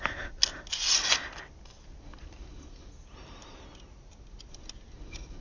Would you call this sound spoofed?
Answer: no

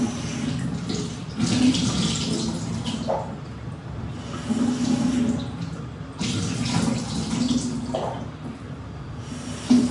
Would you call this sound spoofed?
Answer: no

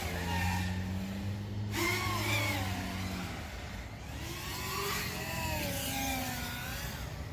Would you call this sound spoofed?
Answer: no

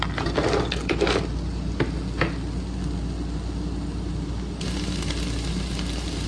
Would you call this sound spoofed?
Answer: no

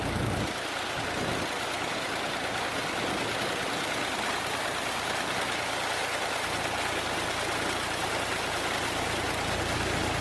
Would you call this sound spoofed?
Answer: no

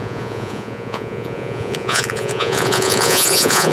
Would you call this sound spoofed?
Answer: yes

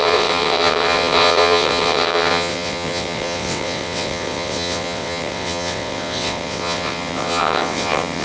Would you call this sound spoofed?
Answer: yes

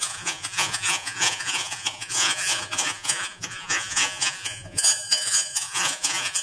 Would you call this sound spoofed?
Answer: yes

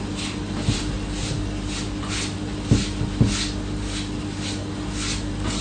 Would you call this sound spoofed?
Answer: no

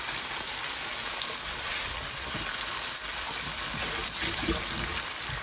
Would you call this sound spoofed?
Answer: no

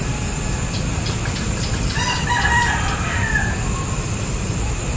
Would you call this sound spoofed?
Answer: yes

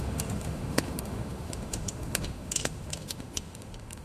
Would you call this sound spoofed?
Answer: yes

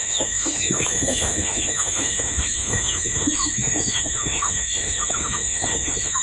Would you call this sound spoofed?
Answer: yes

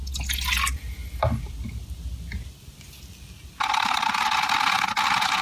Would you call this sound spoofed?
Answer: no